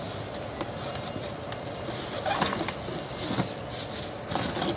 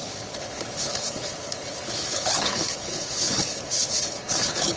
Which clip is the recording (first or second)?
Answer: first